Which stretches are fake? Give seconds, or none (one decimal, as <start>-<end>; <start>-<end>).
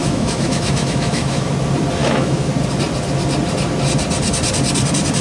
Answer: 0.0-1.5; 2.0-2.5